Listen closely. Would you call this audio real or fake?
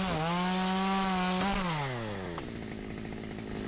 real